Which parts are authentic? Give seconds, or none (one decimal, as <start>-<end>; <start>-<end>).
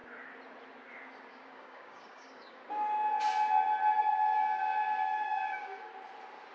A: 0.0-1.3; 2.6-4.0; 5.9-6.5